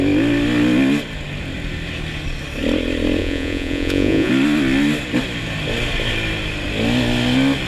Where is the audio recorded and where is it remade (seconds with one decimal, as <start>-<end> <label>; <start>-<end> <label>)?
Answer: 0.0-3.2 recorded; 3.2-4.3 remade; 4.3-7.7 recorded